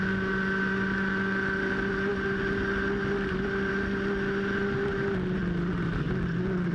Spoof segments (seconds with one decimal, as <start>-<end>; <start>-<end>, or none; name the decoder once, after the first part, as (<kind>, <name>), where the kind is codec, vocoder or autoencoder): none